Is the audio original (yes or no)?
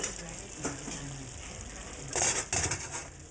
yes